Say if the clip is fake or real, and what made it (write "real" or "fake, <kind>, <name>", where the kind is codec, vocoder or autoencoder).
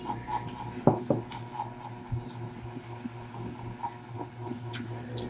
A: real